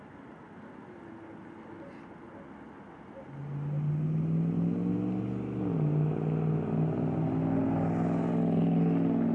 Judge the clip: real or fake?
real